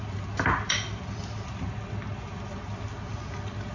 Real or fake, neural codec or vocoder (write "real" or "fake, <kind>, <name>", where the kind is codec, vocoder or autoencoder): real